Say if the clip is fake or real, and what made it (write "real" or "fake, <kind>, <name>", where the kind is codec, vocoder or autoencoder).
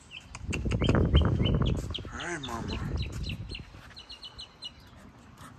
real